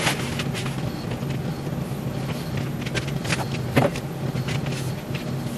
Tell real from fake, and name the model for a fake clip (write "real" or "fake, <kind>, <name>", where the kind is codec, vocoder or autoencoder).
real